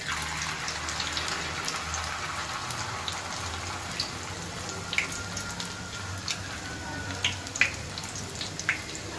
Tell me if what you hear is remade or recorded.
recorded